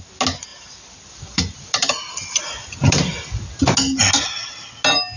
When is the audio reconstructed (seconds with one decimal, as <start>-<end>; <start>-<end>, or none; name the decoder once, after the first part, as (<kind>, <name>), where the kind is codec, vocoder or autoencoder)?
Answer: 0.5-3.6 (vocoder, BigVGAN v2)